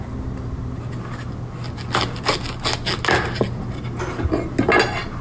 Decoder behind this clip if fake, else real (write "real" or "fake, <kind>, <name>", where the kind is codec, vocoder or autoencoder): real